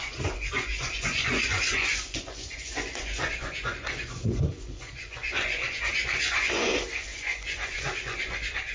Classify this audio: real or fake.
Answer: fake